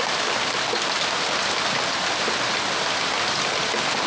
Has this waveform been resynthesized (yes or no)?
no